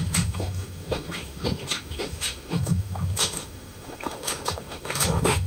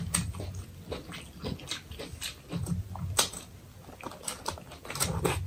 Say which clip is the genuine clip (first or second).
second